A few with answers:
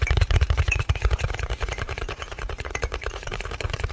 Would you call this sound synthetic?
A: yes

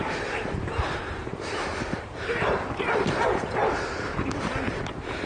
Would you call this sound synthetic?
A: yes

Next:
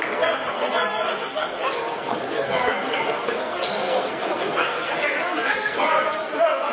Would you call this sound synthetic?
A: yes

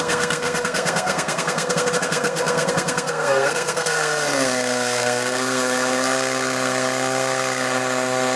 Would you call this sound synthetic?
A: yes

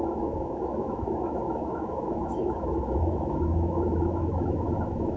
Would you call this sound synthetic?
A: yes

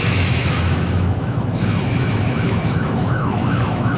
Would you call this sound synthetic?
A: yes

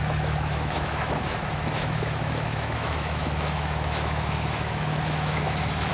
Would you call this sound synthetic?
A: yes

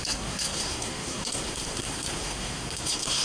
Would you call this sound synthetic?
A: yes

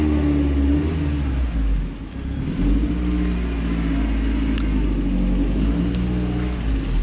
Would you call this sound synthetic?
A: no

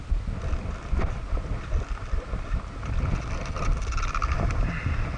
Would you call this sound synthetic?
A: no